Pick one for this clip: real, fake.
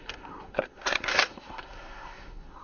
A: fake